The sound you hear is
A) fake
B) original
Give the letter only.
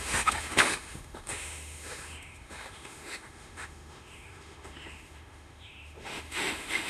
A